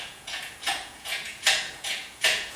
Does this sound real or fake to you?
fake